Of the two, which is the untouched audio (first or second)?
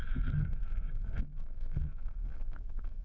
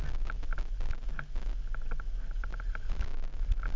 second